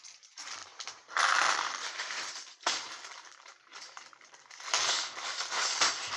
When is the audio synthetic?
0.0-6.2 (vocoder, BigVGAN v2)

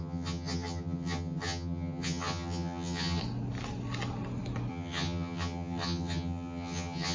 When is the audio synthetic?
0.0-3.2 (vocoder, HiFi-GAN); 4.7-7.1

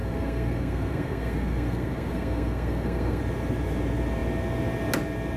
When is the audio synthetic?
0.0-3.2 (codec, SNAC)

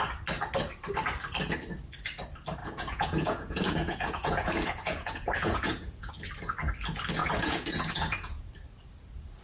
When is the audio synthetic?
2.6-6.1 (vocoder, Vocos); 7.2-8.5

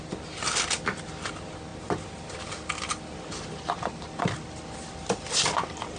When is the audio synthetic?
none

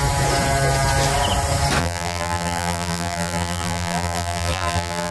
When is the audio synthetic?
1.8-5.1 (vocoder, BigVGAN v2)

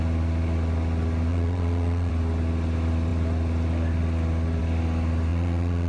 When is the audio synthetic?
1.3-2.1 (vocoder, Vocos); 5.3-5.9